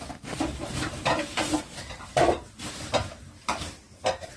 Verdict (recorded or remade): recorded